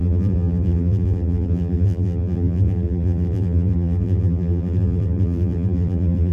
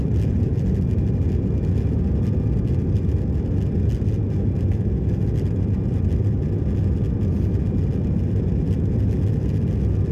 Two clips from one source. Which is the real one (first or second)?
second